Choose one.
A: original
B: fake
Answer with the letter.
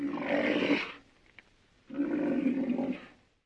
A